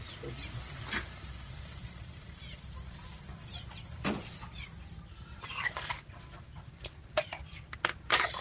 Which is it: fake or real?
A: fake